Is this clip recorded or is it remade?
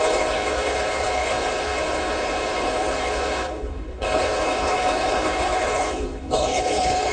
remade